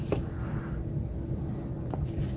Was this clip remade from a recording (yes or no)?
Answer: no